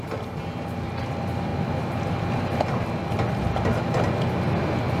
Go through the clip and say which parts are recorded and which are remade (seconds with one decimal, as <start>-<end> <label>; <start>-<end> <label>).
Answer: 0.0-5.0 recorded